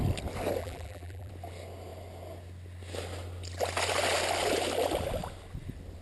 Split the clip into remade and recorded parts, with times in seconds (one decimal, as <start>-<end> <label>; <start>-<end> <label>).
0.0-0.6 recorded; 0.6-1.3 remade; 1.3-6.0 recorded